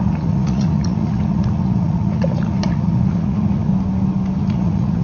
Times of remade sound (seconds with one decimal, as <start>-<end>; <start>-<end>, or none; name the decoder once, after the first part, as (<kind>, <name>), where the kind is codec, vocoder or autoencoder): 0.0-3.7 (vocoder, Vocos); 4.4-5.0